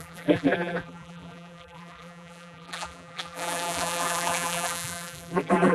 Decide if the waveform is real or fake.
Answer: fake